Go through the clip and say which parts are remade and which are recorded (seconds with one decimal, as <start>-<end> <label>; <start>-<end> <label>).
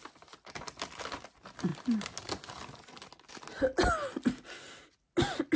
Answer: 0.0-5.6 recorded